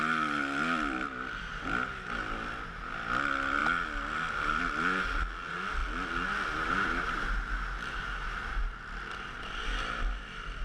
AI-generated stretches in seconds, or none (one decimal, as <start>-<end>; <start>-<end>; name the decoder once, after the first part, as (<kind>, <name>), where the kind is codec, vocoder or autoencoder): none